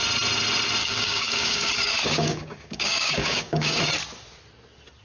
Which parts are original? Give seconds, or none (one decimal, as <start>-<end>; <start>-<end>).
0.0-0.8; 3.8-5.0